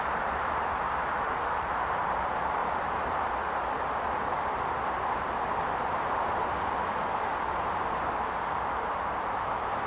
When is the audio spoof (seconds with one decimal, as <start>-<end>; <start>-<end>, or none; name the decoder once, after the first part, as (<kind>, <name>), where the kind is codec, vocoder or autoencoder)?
0.0-2.6 (vocoder, BigVGAN v2); 7.7-9.9